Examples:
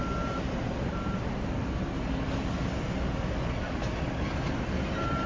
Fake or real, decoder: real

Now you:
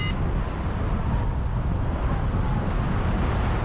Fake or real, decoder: real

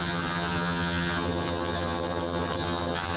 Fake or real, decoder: fake, vocoder, HiFi-GAN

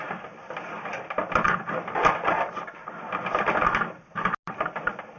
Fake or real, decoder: real